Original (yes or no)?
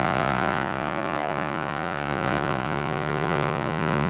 no